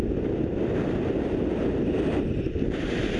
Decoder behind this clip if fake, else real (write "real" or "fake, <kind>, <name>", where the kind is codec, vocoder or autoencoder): real